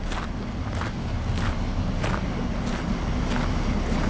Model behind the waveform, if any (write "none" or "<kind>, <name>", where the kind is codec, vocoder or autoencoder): none